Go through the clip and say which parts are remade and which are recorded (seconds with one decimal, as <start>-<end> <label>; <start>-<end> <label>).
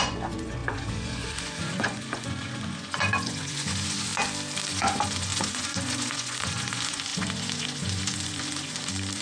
0.0-4.1 remade; 4.1-4.7 recorded; 4.7-9.2 remade